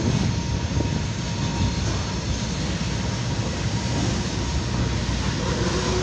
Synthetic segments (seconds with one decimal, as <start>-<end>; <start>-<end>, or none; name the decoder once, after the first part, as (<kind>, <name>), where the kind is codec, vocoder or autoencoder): none